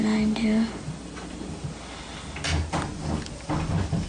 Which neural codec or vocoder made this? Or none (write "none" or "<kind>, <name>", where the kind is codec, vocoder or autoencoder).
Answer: none